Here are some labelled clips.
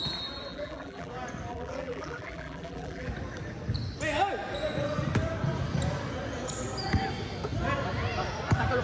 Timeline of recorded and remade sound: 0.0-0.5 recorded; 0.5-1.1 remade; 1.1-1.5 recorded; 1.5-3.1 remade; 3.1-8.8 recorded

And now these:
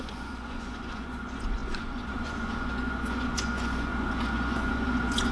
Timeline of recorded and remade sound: 0.0-5.3 remade

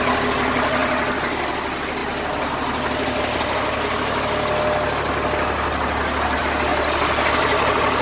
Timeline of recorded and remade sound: 0.0-8.0 recorded

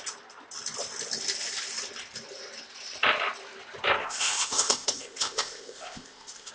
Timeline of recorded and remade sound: 0.0-4.0 recorded; 4.0-6.5 remade

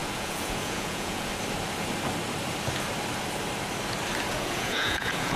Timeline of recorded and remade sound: 0.0-1.3 remade; 1.3-4.3 recorded; 4.3-5.4 remade